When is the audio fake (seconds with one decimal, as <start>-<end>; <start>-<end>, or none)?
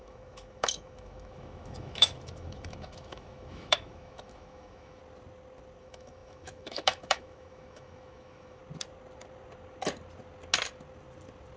0.0-5.0; 5.8-8.6